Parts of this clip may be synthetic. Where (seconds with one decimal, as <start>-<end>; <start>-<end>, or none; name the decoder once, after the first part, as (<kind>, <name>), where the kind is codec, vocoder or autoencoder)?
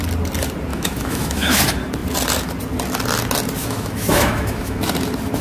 0.7-1.6 (autoencoder, DAC-VAE); 3.6-4.8